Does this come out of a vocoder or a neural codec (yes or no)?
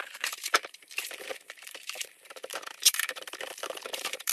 yes